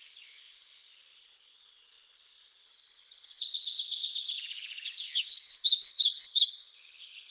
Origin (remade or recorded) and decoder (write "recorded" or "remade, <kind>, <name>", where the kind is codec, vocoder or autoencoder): remade, codec, HILCodec